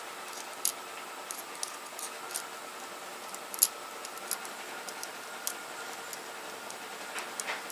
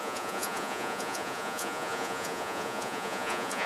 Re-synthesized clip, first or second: second